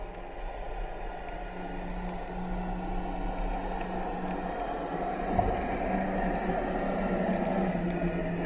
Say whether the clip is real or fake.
real